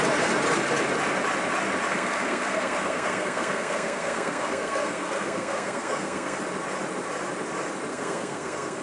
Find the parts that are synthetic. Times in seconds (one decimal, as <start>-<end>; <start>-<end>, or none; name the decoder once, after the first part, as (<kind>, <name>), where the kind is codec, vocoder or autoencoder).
1.9-6.4 (codec, SNAC); 7.9-8.8